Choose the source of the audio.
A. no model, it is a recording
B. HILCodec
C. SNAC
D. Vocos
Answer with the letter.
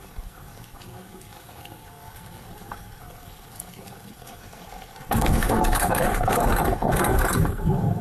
C